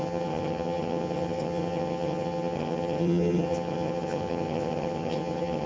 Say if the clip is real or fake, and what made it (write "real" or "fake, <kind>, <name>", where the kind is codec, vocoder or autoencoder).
fake, vocoder, HiFi-GAN